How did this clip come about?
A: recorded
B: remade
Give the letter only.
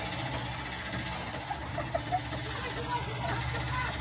A